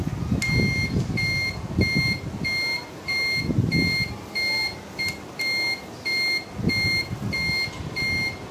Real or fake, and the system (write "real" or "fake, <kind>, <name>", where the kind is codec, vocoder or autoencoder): real